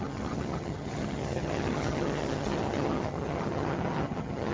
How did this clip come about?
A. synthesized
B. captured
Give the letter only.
A